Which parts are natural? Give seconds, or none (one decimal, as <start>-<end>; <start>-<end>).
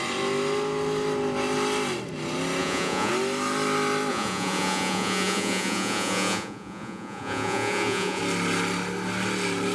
0.0-2.6; 3.1-4.1; 8.2-9.7